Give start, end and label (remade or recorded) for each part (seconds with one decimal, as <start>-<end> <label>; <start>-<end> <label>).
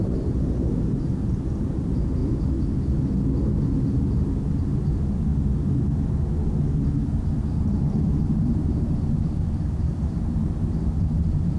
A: 0.0-2.2 remade; 2.2-4.1 recorded; 4.1-5.3 remade; 5.3-6.8 recorded; 6.8-11.6 remade